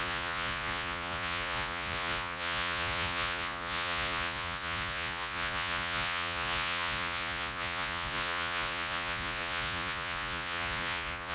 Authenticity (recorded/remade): remade